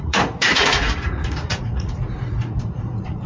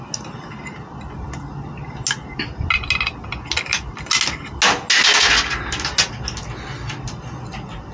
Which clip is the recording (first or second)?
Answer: second